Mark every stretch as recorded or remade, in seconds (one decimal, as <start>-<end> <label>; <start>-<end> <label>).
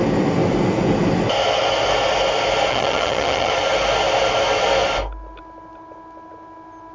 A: 0.0-2.7 recorded; 2.7-3.5 remade; 3.5-6.9 recorded